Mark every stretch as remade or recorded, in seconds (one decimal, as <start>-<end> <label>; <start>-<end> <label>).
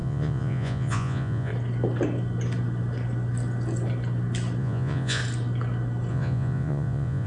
0.0-1.5 remade; 1.5-4.6 recorded; 4.6-5.2 remade; 5.2-6.1 recorded; 6.1-7.3 remade